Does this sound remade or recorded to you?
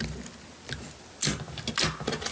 recorded